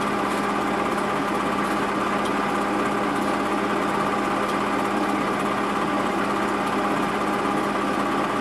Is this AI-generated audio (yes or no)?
no